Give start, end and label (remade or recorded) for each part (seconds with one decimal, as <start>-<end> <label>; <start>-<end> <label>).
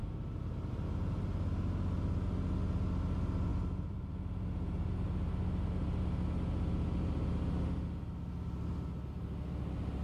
0.0-0.7 remade; 0.7-3.5 recorded; 3.5-4.1 remade; 4.1-10.0 recorded